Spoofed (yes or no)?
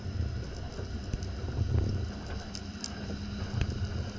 no